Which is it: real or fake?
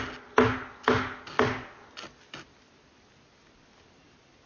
real